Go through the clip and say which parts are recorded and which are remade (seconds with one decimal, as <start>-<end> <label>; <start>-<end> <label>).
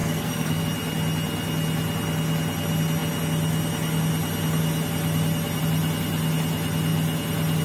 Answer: 0.0-0.6 remade; 0.6-7.6 recorded